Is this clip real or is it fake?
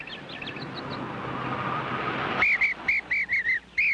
real